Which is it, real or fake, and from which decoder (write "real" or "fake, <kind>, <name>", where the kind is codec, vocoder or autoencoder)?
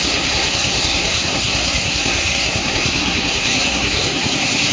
fake, codec, SNAC